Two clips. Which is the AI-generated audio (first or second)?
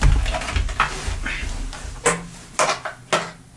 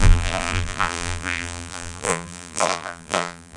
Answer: second